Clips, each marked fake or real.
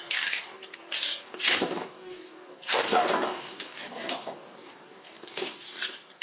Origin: fake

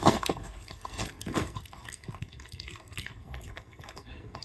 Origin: fake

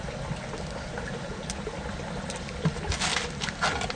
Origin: real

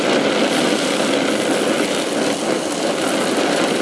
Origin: real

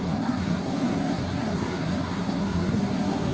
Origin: fake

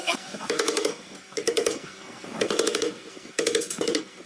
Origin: fake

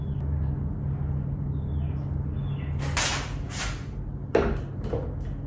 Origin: real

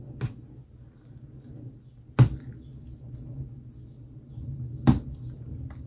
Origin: real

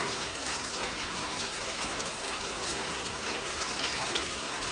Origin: fake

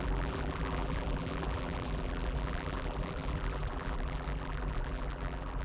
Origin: fake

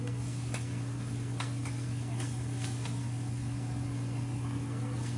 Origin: fake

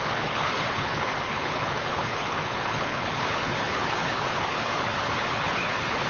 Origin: fake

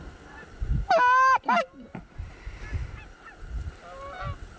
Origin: real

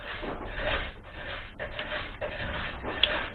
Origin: fake